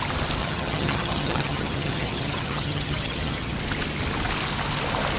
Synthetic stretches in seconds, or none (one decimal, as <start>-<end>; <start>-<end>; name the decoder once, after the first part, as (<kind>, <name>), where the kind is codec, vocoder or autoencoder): 0.4-3.5 (vocoder, HiFi-GAN)